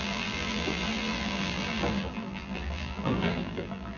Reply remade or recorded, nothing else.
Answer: remade